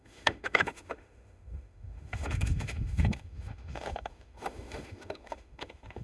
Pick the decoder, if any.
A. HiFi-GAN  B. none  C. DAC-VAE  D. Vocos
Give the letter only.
C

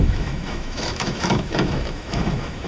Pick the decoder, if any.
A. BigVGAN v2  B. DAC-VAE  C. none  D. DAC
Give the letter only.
B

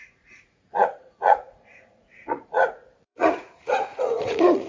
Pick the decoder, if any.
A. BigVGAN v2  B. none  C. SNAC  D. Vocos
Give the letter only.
D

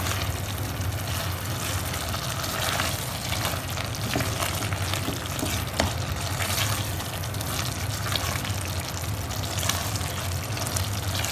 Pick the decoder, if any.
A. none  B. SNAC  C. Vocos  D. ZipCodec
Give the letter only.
A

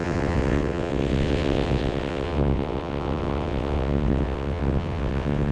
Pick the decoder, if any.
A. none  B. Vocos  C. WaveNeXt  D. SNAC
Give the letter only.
C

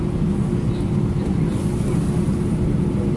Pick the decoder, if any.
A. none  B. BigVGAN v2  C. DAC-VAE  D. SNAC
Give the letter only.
A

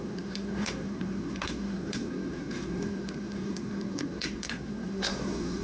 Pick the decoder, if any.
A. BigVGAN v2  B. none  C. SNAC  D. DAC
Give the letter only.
C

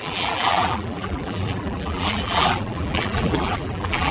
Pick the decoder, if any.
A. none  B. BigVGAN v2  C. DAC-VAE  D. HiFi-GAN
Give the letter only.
B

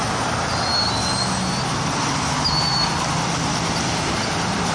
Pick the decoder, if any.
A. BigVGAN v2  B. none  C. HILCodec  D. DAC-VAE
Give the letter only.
B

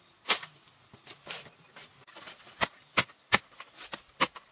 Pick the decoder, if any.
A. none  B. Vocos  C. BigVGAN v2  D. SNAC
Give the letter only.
A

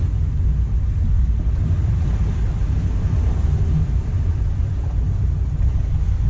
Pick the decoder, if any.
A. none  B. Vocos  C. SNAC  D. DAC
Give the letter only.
A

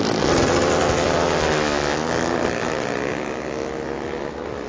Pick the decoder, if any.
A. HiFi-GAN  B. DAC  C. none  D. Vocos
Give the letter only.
C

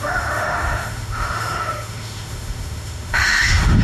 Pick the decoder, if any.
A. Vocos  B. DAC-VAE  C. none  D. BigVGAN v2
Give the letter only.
B